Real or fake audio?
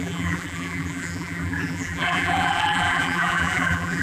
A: fake